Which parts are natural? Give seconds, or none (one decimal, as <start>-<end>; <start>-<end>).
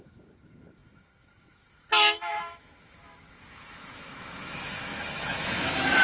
none